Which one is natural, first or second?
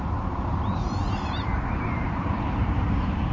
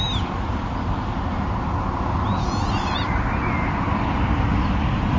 second